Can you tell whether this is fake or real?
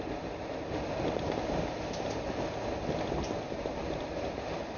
real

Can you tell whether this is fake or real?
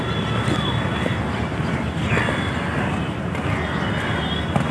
real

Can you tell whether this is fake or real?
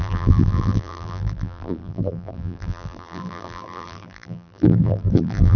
fake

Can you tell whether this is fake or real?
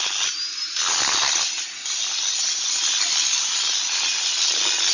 real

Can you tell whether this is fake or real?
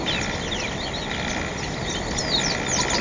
real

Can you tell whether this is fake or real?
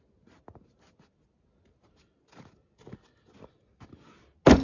real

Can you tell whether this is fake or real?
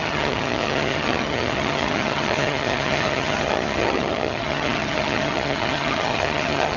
fake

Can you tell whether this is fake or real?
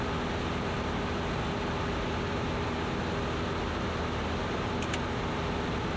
real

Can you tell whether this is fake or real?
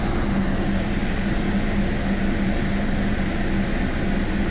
real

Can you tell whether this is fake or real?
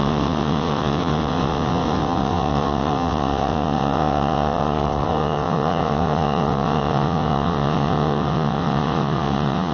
fake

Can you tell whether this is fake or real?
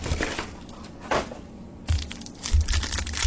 real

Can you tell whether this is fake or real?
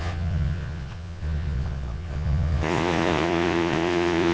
fake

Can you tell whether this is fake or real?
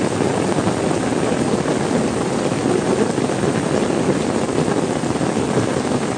real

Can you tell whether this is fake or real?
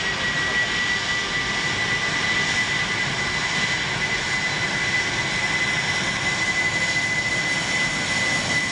real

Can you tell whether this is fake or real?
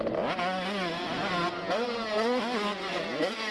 real